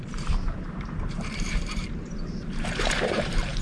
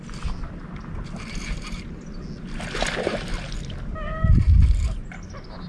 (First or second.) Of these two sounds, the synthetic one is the first